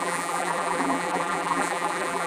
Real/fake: fake